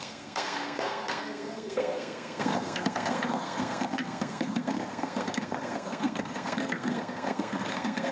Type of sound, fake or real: fake